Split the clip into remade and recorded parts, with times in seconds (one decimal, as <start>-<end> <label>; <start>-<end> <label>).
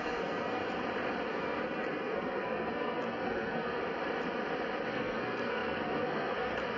0.0-0.6 remade; 0.6-1.3 recorded; 1.3-3.8 remade; 3.8-4.9 recorded; 4.9-6.8 remade